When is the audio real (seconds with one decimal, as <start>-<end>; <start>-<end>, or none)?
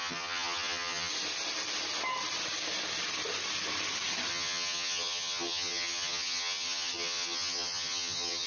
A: 1.1-4.3